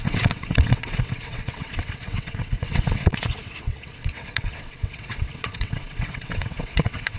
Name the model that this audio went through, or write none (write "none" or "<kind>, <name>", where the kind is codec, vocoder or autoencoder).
vocoder, WaveNeXt